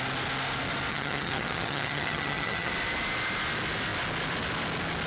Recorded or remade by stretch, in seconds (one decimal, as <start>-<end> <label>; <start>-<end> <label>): 0.0-0.9 recorded; 0.9-2.7 remade; 2.7-5.1 recorded